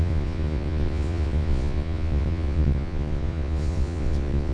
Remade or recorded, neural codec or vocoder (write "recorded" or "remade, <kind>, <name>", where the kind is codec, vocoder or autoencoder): remade, vocoder, Vocos